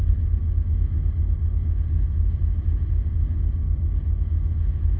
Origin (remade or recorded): recorded